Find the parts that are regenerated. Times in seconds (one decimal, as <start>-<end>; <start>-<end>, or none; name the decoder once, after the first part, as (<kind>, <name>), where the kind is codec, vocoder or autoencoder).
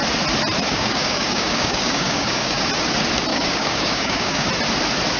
0.7-2.7 (codec, DAC); 3.3-4.5